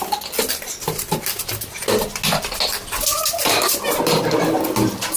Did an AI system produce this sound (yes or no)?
no